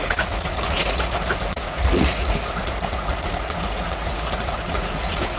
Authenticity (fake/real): fake